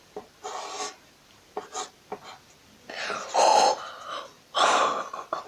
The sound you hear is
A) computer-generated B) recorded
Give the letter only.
B